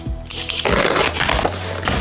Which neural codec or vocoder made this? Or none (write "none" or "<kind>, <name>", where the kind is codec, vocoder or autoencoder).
none